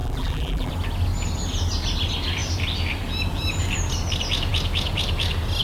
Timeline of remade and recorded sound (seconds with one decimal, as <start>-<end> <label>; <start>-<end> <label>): 0.0-0.7 remade; 0.7-5.6 recorded